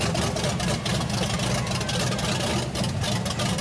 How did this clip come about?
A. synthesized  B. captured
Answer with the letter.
B